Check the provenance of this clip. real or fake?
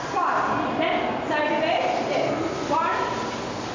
real